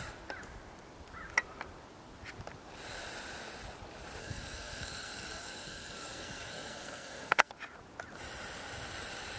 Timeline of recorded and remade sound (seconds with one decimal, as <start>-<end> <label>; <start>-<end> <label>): 0.0-4.2 recorded; 4.2-7.5 remade; 7.5-9.4 recorded